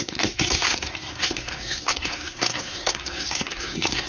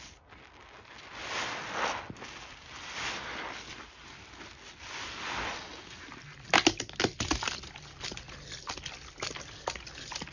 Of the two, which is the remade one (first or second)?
first